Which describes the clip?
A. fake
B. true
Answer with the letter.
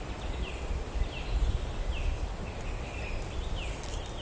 B